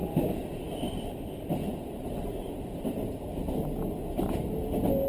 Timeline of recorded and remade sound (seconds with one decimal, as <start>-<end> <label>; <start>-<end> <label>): 0.0-3.1 remade; 3.1-5.1 recorded